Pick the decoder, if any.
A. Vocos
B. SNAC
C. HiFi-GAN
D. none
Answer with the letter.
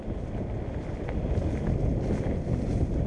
D